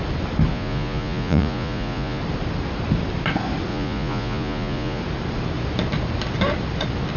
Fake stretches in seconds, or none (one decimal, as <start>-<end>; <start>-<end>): 0.5-2.2; 3.7-5.0